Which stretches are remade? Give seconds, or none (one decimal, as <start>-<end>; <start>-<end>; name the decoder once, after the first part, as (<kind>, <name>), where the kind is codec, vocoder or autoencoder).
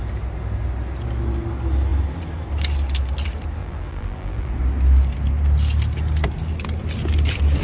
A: 3.6-4.5 (vocoder, BigVGAN v2)